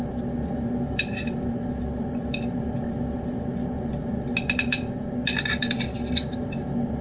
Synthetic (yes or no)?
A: no